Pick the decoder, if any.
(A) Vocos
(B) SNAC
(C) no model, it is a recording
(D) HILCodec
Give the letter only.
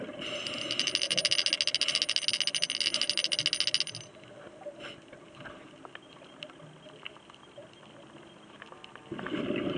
C